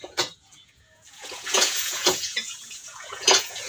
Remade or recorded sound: remade